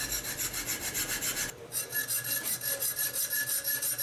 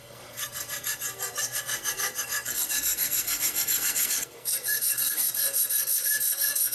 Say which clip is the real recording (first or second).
first